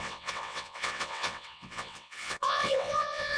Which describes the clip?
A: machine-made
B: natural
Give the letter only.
A